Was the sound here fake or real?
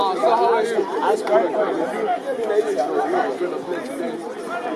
real